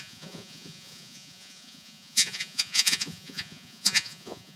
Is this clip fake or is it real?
fake